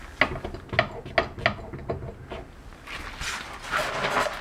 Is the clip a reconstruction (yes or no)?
no